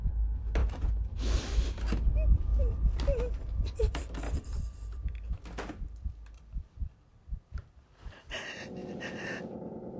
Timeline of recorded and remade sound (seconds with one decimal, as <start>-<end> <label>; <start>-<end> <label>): 0.0-0.6 recorded; 0.6-1.8 remade; 1.8-2.5 recorded; 2.5-5.0 remade; 5.0-6.8 recorded; 6.8-7.5 remade; 7.5-8.8 recorded; 8.8-10.0 remade